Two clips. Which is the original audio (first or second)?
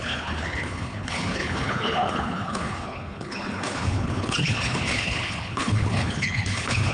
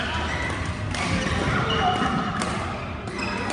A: second